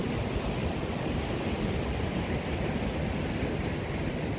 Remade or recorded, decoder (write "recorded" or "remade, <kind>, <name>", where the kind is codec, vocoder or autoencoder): recorded